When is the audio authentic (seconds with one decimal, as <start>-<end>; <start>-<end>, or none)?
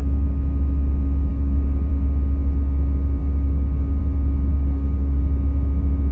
0.0-1.3; 1.9-3.2; 4.0-4.5; 5.2-6.1